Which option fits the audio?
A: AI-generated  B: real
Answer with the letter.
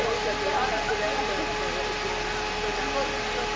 B